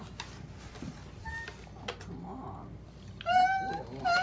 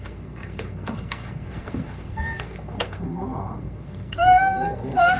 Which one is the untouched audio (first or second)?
first